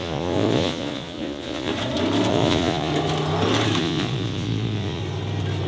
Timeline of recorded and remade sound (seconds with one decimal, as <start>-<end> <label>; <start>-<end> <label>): 0.0-1.7 remade; 1.7-2.3 recorded; 2.3-2.9 remade; 2.9-3.8 recorded; 3.8-5.0 remade; 5.0-5.7 recorded